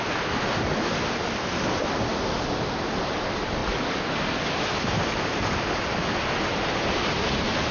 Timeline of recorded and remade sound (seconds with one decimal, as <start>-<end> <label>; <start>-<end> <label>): 0.0-7.7 recorded